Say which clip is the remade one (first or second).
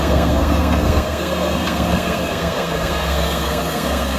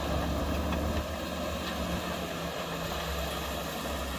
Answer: first